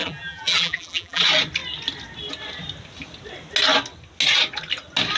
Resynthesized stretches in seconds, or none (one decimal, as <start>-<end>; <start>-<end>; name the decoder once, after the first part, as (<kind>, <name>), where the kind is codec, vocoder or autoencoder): 0.0-1.2 (vocoder, BigVGAN v2)